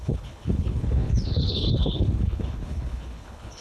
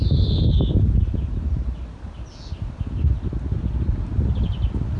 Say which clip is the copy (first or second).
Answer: first